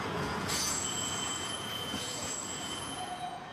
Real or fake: fake